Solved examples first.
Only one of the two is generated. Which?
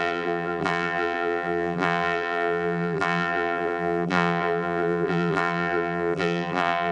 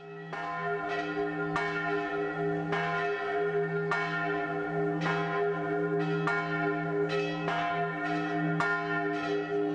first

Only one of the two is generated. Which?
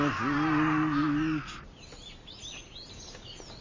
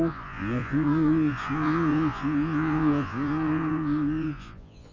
second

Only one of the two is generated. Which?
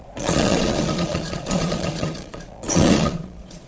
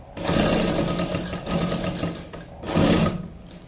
first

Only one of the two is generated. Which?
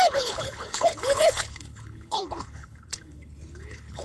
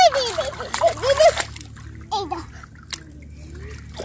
first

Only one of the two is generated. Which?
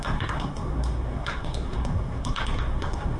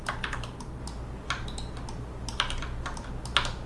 first